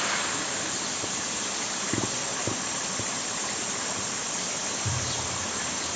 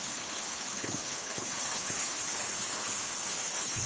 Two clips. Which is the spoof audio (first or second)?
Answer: second